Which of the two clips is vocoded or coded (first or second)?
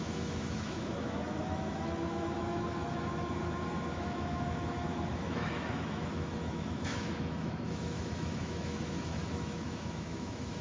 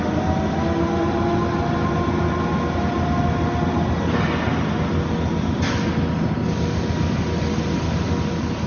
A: first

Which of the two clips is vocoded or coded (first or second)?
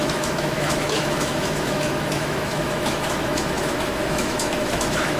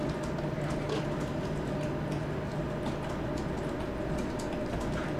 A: first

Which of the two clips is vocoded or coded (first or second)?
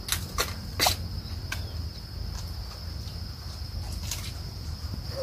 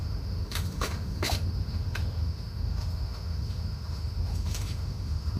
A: second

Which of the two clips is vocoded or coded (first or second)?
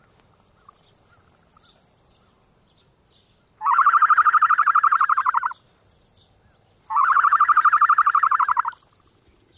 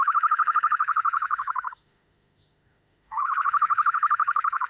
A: second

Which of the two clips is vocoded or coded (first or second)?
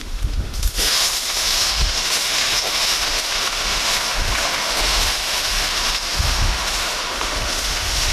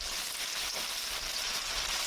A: first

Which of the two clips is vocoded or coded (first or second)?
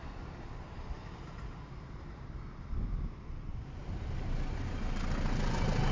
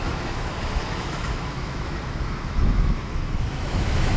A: second